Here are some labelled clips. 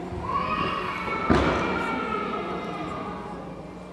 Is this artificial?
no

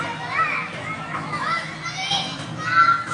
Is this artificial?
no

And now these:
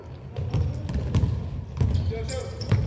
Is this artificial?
no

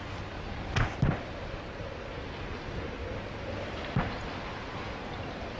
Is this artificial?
no